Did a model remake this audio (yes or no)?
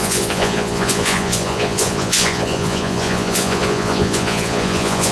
yes